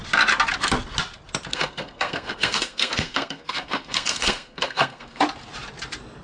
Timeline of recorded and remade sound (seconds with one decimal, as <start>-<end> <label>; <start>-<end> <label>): 0.0-1.5 recorded; 1.5-5.2 remade; 5.2-6.2 recorded